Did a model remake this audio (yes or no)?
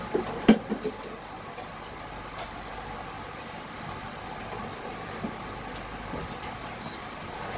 no